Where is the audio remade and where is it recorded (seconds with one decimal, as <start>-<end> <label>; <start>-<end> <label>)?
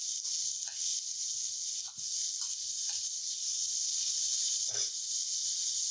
0.0-0.9 recorded; 0.9-1.5 remade; 1.5-2.5 recorded; 2.5-4.6 remade; 4.6-5.9 recorded